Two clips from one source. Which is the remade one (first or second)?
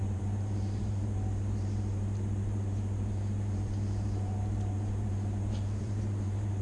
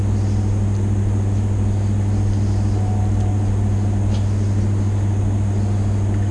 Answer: first